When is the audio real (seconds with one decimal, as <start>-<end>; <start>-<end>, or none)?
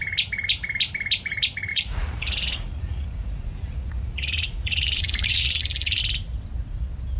0.0-1.7; 6.0-7.2